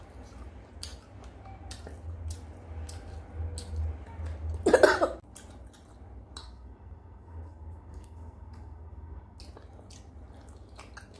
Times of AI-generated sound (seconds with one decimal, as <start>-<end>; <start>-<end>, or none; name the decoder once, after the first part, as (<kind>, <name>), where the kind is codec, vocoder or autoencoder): 6.4-9.4 (codec, SNAC)